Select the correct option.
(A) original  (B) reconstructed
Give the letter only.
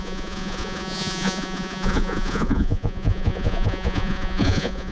B